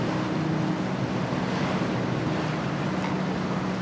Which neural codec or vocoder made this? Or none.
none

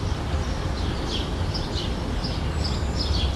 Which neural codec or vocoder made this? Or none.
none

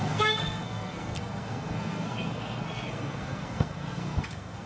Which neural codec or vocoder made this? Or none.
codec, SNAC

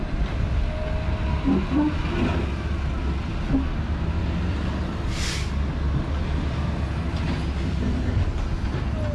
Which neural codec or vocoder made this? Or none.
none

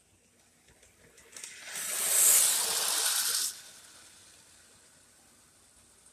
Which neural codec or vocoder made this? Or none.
none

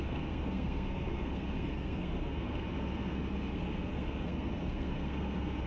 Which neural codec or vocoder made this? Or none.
codec, SNAC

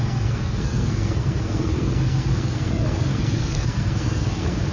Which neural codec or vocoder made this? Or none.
codec, SNAC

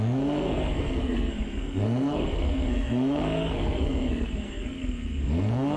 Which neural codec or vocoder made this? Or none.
codec, SNAC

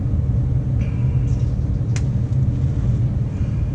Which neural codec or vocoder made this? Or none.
none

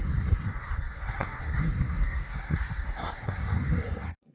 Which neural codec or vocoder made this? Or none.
codec, SNAC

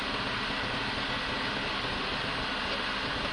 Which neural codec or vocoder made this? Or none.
none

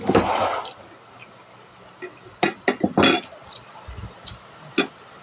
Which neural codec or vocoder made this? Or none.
none